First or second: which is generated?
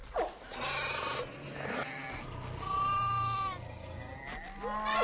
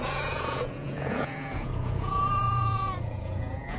second